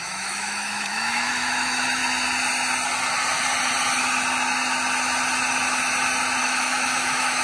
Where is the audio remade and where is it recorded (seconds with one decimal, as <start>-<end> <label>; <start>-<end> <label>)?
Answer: 0.0-2.0 remade; 2.0-6.4 recorded; 6.4-7.4 remade